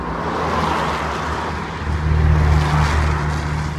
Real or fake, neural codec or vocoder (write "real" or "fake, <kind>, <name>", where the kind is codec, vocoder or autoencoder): real